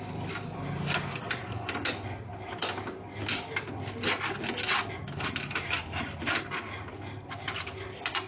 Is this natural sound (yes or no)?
yes